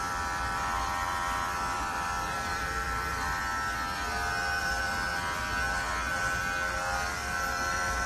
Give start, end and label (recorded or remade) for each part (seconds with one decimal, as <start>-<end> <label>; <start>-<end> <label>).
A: 0.0-3.4 remade; 3.4-4.6 recorded; 4.6-5.1 remade; 5.1-7.3 recorded; 7.3-8.1 remade

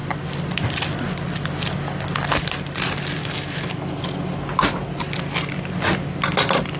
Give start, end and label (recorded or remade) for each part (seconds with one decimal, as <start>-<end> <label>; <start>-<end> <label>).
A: 0.0-3.2 recorded; 3.2-3.8 remade; 3.8-6.8 recorded

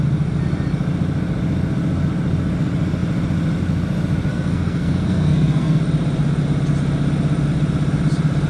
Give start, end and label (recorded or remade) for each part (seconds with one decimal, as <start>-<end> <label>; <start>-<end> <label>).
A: 0.0-4.3 recorded; 4.3-5.8 remade; 5.8-8.5 recorded

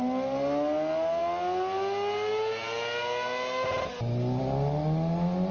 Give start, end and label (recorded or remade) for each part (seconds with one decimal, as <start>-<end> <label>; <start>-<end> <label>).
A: 0.0-5.5 recorded

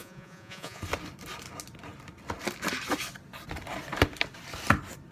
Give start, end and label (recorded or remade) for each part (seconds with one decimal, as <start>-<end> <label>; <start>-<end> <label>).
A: 0.0-0.8 remade; 0.8-5.1 recorded

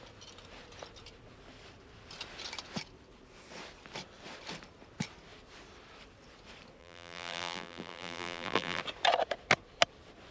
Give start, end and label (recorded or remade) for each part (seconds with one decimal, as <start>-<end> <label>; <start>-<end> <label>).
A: 0.0-6.8 recorded; 6.8-8.8 remade; 8.8-10.3 recorded

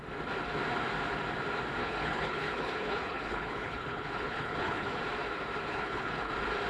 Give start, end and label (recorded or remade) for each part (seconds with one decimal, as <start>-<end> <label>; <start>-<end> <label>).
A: 0.0-1.8 recorded; 1.8-5.0 remade; 5.0-5.7 recorded; 5.7-6.3 remade; 6.3-6.7 recorded

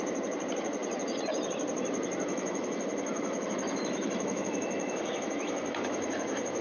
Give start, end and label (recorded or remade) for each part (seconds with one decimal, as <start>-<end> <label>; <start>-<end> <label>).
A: 0.0-2.3 recorded; 2.3-6.6 remade